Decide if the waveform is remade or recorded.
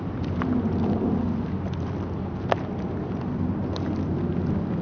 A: recorded